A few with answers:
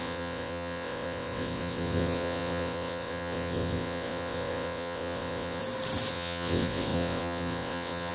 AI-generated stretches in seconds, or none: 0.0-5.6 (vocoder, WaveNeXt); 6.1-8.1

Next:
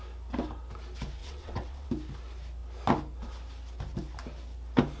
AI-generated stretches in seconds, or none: 1.2-1.9 (vocoder, WaveNeXt)

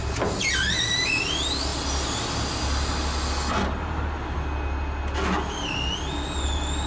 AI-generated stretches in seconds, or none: none